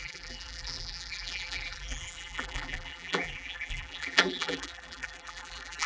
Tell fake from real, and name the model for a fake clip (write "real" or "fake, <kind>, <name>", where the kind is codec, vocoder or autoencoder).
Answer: fake, vocoder, BigVGAN v2